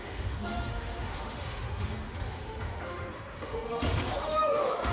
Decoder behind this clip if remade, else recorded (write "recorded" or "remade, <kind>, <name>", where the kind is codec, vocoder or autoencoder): remade, autoencoder, DAC-VAE